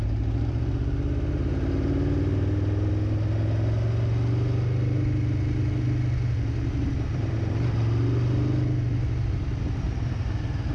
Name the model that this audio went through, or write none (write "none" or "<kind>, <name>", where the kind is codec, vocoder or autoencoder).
none